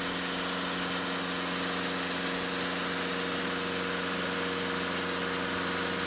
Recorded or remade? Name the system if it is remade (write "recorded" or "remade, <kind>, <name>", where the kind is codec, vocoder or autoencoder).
recorded